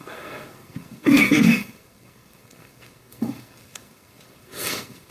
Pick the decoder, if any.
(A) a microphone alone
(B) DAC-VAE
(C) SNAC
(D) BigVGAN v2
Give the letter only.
C